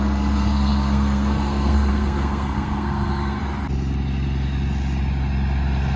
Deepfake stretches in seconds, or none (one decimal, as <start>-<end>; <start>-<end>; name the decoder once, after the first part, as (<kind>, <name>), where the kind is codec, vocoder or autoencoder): 0.0-3.4 (codec, SNAC)